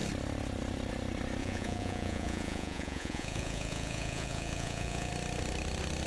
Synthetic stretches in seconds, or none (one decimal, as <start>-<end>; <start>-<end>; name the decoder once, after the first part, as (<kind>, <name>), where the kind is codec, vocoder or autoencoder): 1.4-5.1 (vocoder, Vocos)

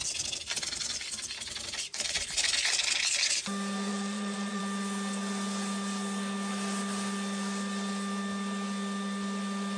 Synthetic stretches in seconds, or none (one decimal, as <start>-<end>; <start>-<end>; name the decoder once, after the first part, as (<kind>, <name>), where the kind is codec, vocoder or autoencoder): 3.9-4.6 (vocoder, Vocos)

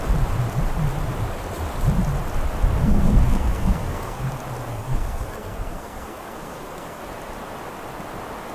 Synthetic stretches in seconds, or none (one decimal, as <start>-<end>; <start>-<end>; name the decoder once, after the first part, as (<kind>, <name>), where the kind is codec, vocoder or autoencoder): 2.8-4.3 (codec, SNAC); 4.7-7.0

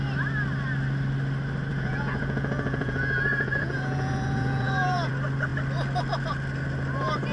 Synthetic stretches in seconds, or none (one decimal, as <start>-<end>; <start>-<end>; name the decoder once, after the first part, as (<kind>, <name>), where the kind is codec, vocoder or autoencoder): 1.7-5.1 (vocoder, Vocos)

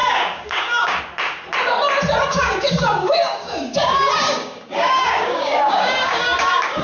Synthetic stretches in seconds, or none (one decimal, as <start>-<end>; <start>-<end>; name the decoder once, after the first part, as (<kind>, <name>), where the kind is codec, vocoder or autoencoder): 0.0-1.0 (codec, DAC); 2.3-6.8

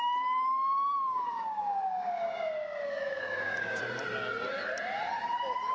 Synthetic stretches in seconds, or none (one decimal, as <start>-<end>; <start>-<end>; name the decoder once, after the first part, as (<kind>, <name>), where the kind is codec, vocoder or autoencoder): 0.6-3.8 (codec, DAC)

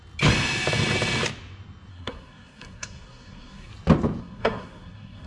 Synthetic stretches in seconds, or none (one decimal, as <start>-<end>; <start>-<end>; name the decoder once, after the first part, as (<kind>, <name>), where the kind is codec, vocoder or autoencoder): 1.9-3.7 (codec, SNAC); 4.2-5.3